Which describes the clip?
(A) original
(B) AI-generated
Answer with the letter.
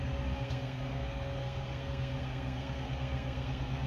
B